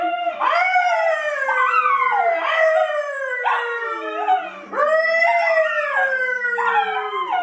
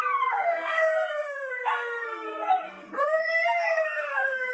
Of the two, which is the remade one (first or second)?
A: second